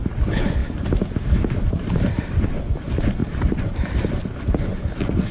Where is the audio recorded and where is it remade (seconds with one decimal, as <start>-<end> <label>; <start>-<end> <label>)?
0.0-0.6 recorded; 0.6-2.4 remade; 2.4-3.2 recorded; 3.2-4.2 remade; 4.2-5.3 recorded